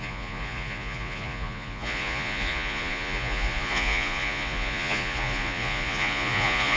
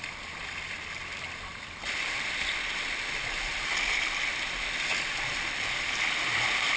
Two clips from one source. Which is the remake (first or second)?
first